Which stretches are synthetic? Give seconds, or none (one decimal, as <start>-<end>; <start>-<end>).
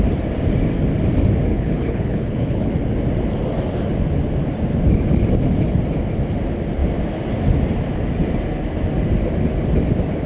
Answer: 1.5-2.8